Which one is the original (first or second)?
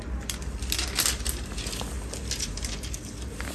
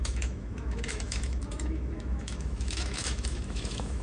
first